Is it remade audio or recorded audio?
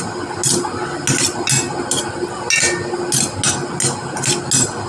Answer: recorded